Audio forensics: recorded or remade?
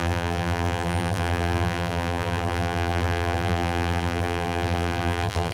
remade